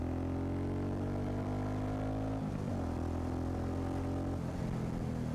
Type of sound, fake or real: real